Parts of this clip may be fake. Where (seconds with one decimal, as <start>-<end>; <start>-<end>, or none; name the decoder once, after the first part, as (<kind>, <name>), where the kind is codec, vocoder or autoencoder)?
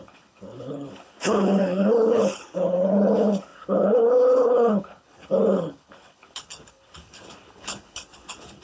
0.0-8.6 (codec, HILCodec)